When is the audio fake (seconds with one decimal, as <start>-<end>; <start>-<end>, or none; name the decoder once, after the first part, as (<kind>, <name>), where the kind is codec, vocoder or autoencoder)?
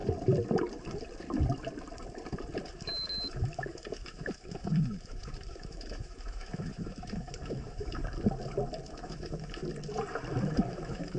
2.7-8.0 (autoencoder, DAC-VAE); 8.9-9.6; 10.4-11.2